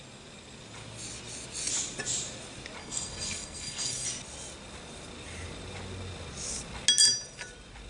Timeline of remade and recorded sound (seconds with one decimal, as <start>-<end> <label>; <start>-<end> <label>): 0.0-2.8 recorded; 2.8-4.1 remade; 4.1-7.9 recorded